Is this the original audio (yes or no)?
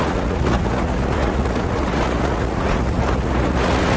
no